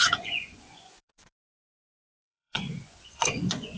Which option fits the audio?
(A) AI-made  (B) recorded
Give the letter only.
A